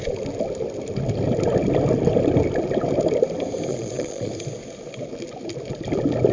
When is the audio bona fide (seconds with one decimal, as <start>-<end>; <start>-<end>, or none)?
0.0-3.7; 4.3-6.3